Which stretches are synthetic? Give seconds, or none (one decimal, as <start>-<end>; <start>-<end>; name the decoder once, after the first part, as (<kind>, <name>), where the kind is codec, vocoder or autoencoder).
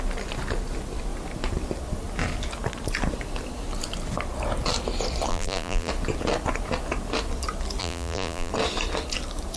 5.3-5.9 (vocoder, BigVGAN v2); 7.8-8.5